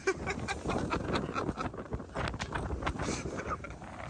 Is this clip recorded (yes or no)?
yes